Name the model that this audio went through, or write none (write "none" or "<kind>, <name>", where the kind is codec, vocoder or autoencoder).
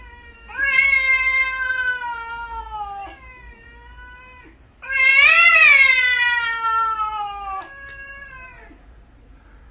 none